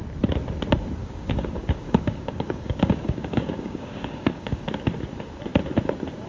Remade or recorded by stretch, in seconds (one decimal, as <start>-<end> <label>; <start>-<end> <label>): 0.0-1.0 recorded; 1.0-4.6 remade; 4.6-6.3 recorded